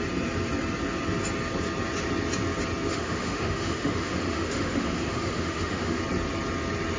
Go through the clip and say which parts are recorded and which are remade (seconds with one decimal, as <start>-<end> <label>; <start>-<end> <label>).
0.0-2.9 recorded; 2.9-6.0 remade; 6.0-7.0 recorded